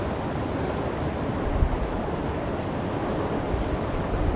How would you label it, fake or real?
real